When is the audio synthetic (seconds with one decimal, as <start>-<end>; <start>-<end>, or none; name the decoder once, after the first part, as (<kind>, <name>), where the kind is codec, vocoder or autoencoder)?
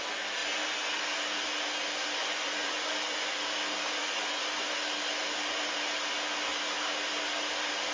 0.4-1.0 (vocoder, Vocos); 2.2-3.4; 4.0-4.7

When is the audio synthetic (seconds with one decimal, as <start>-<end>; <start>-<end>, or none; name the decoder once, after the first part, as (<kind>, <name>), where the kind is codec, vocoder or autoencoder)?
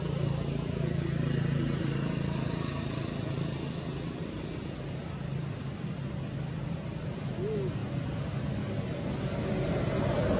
none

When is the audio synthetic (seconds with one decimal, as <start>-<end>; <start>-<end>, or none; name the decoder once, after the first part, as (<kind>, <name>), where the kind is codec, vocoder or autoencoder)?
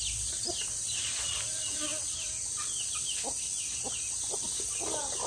none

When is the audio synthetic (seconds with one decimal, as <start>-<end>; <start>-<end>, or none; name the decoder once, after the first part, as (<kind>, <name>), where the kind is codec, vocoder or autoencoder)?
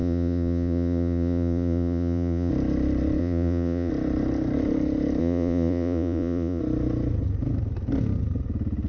0.0-2.5 (vocoder, Vocos); 3.2-3.9; 5.2-6.6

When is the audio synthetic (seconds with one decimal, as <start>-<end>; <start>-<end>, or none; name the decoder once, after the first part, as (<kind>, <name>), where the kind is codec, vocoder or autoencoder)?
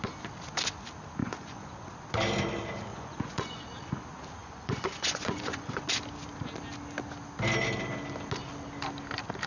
1.2-1.9 (vocoder, Vocos); 2.9-3.6; 4.4-5.9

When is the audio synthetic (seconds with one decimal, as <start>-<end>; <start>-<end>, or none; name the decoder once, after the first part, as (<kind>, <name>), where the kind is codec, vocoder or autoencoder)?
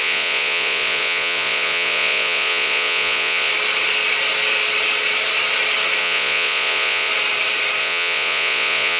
0.0-3.5 (vocoder, Vocos); 6.0-7.1; 7.8-9.0